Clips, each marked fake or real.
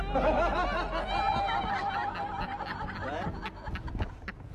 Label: real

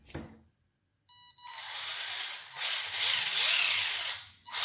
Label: real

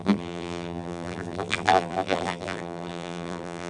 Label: fake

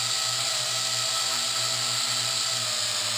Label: real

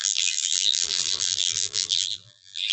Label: fake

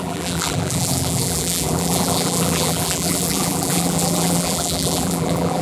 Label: fake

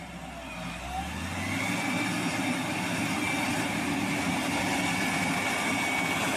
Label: real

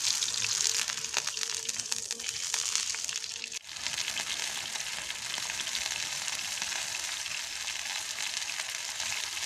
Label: real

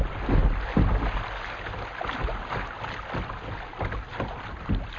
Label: real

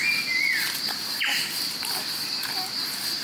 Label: real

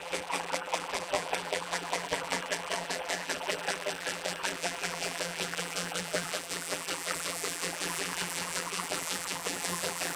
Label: fake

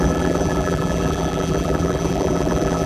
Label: fake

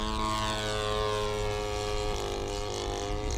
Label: real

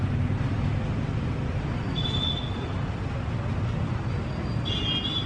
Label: real